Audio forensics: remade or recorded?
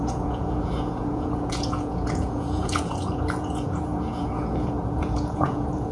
remade